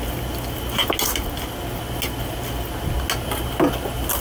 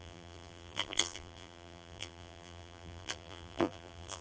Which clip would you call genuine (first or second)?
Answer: first